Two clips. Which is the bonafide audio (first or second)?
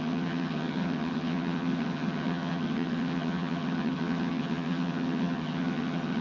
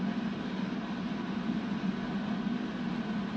second